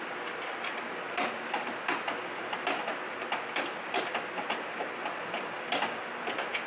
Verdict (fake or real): real